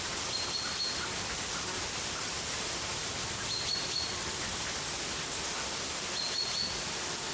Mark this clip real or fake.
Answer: real